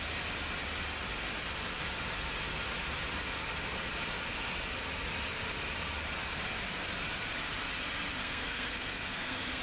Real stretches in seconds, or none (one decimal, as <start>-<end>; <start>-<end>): 0.0-8.2